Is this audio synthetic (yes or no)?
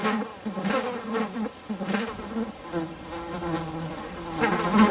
no